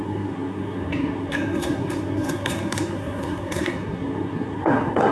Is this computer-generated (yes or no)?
yes